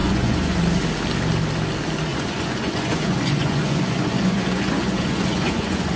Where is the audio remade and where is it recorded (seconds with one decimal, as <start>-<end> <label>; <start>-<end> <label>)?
0.0-0.6 remade; 0.6-2.1 recorded; 2.1-6.0 remade